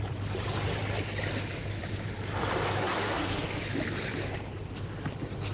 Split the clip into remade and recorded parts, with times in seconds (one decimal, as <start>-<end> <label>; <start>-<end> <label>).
0.0-2.8 recorded; 2.8-3.4 remade; 3.4-5.5 recorded